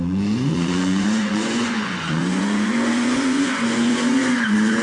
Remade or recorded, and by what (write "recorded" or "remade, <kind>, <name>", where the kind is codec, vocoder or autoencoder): remade, vocoder, Vocos